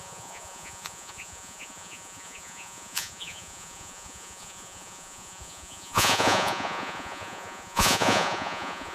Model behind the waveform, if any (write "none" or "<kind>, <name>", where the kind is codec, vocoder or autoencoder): vocoder, Vocos